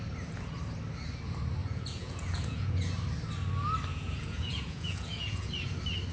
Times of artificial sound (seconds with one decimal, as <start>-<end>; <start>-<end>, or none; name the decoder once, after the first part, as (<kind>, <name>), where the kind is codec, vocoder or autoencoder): 1.6-2.9 (vocoder, Vocos); 3.9-5.5